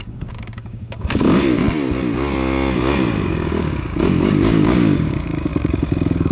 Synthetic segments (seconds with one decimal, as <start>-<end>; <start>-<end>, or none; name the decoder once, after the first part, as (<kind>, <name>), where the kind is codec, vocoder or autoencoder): 0.0-1.6 (codec, DAC); 3.3-6.3